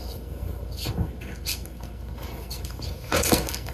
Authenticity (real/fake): fake